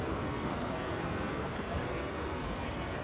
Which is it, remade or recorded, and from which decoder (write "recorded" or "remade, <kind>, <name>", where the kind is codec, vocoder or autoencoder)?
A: remade, codec, SNAC